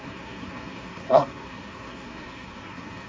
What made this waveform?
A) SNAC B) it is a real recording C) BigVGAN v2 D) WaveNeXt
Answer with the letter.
A